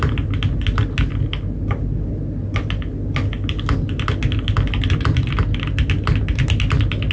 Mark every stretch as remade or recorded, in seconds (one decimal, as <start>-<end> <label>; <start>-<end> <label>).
0.0-7.1 recorded